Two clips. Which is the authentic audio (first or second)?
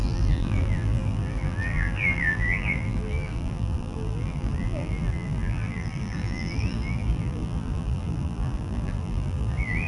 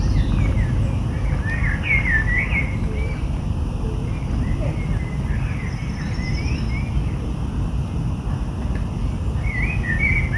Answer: second